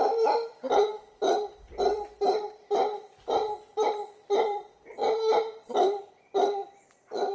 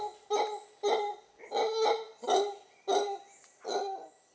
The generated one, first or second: first